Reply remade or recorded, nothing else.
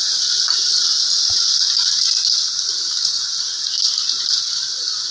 recorded